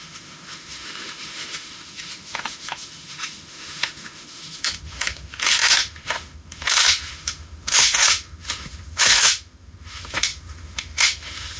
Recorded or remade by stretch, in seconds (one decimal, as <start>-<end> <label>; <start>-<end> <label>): 0.0-11.6 remade